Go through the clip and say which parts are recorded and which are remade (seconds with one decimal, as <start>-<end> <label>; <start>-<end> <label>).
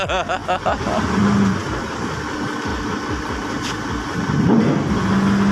0.0-1.6 recorded; 1.6-2.1 remade; 2.1-2.7 recorded; 2.7-4.9 remade; 4.9-5.5 recorded